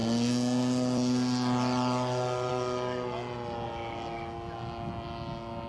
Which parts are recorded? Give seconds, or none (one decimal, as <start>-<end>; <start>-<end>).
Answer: 0.0-5.7